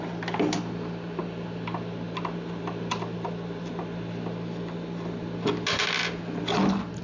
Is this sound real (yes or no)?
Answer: yes